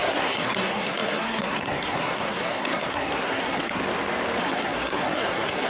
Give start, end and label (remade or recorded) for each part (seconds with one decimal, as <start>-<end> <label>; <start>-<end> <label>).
0.0-3.8 remade; 3.8-4.4 recorded; 4.4-5.7 remade

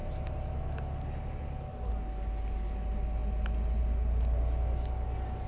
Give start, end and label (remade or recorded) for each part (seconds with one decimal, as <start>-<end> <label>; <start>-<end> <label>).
0.0-5.5 recorded